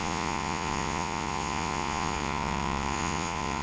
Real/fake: fake